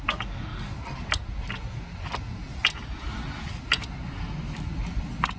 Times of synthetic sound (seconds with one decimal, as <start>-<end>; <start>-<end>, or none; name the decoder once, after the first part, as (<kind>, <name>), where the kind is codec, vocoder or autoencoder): none